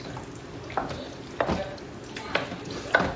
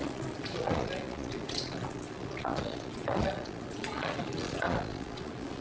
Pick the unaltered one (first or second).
first